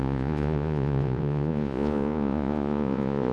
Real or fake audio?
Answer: fake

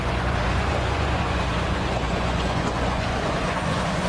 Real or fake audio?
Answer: fake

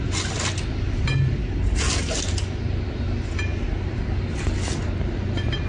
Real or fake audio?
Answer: real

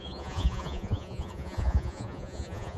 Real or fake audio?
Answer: fake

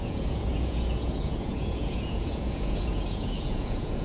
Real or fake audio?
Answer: fake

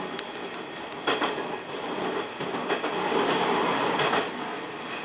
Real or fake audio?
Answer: real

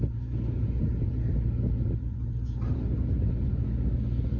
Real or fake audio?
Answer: real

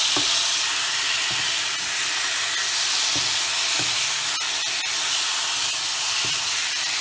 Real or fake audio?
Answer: real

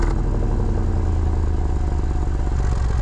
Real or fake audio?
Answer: real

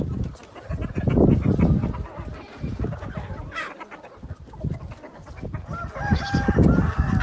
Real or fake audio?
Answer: real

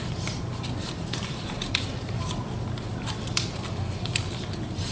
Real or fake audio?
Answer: real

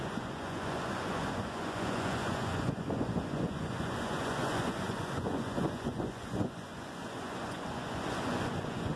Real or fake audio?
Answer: fake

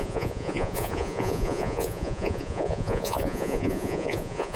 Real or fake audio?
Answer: fake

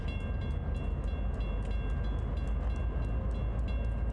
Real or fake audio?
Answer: real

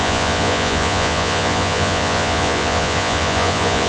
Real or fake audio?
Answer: fake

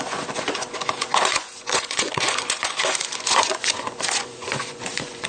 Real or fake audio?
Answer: fake